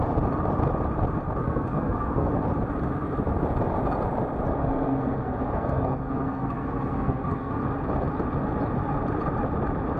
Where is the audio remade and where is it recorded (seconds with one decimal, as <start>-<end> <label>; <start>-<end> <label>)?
0.0-1.4 recorded; 1.4-2.3 remade; 2.3-4.6 recorded; 4.6-7.6 remade; 7.6-10.0 recorded